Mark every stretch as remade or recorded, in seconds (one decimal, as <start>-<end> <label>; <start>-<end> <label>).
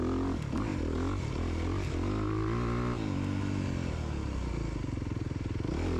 0.0-6.0 recorded